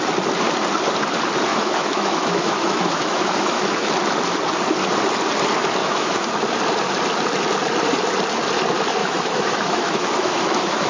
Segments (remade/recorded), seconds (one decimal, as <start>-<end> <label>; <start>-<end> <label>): 0.0-1.5 recorded; 1.5-3.9 remade; 3.9-5.8 recorded; 5.8-6.3 remade; 6.3-9.0 recorded; 9.0-10.9 remade